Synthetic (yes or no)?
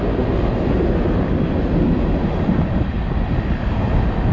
no